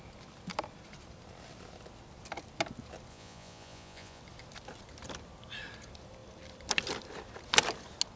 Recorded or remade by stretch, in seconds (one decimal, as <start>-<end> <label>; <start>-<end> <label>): 0.0-3.1 recorded; 3.1-4.2 remade; 4.2-8.2 recorded